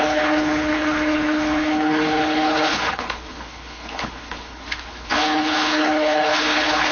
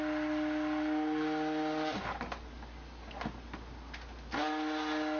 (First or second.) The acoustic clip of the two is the second